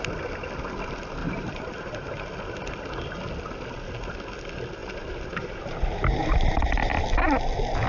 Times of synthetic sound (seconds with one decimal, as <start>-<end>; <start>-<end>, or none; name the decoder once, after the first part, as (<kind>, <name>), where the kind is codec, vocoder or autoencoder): 1.2-2.3 (vocoder, BigVGAN v2); 4.8-6.9